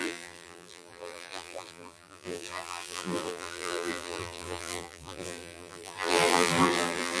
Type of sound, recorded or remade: remade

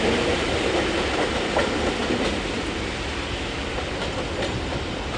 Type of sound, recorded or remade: recorded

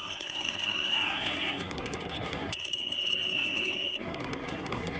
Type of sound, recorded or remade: remade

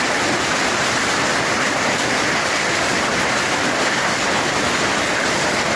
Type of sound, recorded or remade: remade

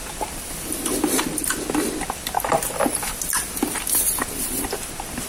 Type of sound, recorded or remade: remade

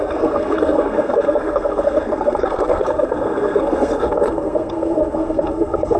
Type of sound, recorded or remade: remade